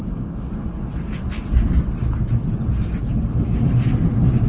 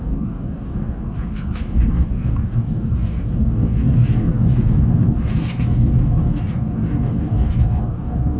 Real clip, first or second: first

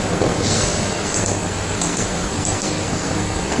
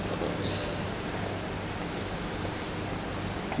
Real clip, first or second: second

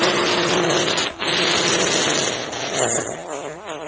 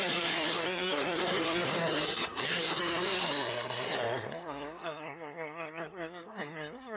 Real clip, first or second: first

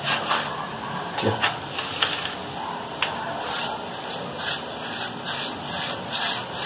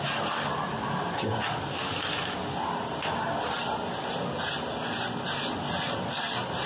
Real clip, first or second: second